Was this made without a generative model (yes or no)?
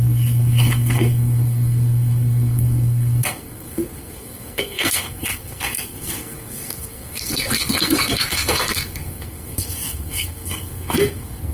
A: no